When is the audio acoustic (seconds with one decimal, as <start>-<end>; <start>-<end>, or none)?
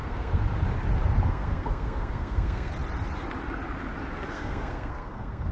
0.4-1.3; 2.7-4.3